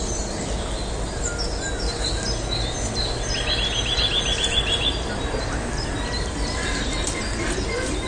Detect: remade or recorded recorded